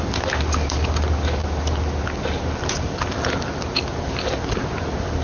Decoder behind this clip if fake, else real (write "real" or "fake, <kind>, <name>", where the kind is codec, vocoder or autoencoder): real